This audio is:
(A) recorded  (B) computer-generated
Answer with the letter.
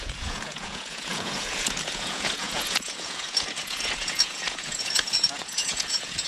B